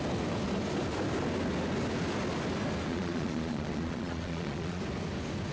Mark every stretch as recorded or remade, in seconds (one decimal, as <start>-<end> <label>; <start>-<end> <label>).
0.0-2.9 recorded; 2.9-4.8 remade; 4.8-5.5 recorded